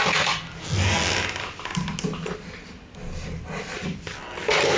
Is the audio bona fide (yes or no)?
yes